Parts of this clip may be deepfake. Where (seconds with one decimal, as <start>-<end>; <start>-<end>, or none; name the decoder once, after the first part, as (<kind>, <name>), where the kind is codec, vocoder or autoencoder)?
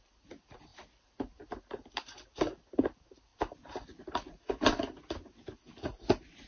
none